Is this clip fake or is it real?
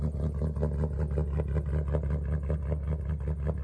real